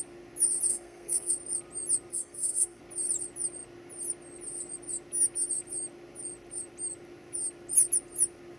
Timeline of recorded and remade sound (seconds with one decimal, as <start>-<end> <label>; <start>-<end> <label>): 0.0-0.7 recorded; 0.7-1.3 remade; 1.3-2.1 recorded; 2.1-2.8 remade; 2.8-8.6 recorded